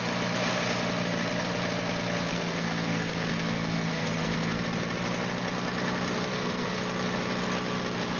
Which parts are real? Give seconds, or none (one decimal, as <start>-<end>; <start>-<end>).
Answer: 0.0-2.3; 4.6-6.3; 6.8-8.2